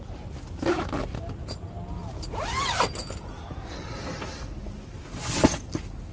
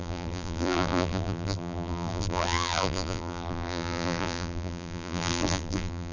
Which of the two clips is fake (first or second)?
second